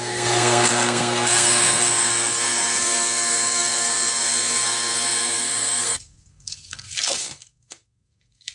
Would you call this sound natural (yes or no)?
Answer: no